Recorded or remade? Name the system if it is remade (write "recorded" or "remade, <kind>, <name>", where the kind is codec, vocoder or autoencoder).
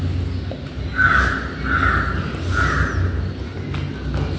recorded